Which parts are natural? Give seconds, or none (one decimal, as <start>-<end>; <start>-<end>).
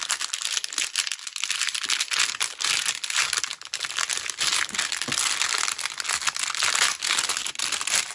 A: 0.0-8.1